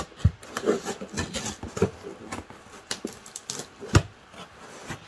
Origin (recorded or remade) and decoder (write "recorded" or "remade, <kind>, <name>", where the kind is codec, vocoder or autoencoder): recorded